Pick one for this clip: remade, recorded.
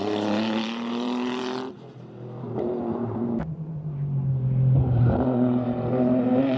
remade